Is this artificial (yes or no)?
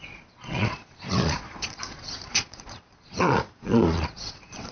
yes